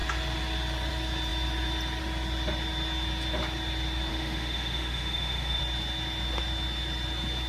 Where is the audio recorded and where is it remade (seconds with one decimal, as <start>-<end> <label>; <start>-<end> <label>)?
0.0-4.1 recorded; 4.1-5.6 remade; 5.6-7.5 recorded